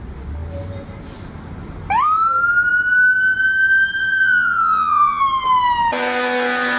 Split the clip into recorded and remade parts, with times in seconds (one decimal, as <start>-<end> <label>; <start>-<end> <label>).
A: 0.0-4.0 recorded; 4.0-5.2 remade; 5.2-6.8 recorded